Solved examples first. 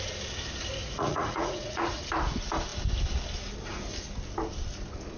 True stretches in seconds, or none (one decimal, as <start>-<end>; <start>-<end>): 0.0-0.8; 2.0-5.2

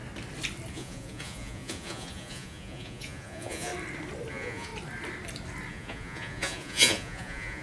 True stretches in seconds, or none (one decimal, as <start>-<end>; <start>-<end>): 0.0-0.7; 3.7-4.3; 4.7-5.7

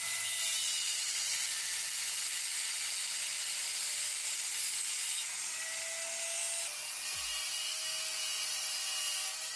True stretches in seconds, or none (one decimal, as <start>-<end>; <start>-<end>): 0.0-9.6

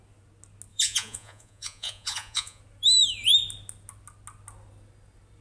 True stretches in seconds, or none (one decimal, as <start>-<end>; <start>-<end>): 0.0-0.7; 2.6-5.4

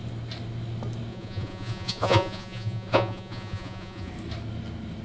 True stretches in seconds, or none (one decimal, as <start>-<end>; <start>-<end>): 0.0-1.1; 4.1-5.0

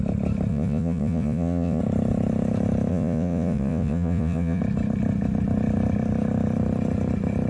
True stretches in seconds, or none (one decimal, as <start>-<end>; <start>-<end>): 0.0-0.5; 1.8-2.9; 4.6-7.5

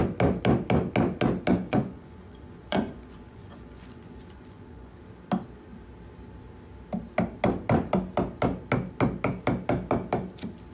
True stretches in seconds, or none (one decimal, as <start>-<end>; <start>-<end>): 0.0-1.5; 5.0-10.7